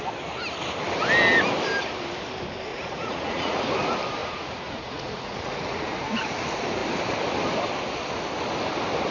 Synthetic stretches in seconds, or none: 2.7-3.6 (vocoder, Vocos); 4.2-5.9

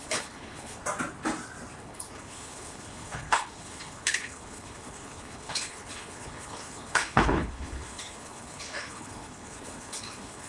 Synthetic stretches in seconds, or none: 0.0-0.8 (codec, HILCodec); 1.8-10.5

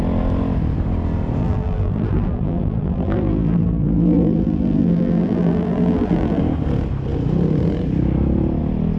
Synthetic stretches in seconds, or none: 1.4-6.4 (vocoder, BigVGAN v2)

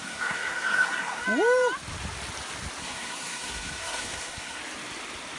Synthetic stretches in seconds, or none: 0.0-1.2 (codec, SNAC); 2.8-4.6